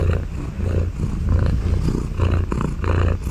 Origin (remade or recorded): recorded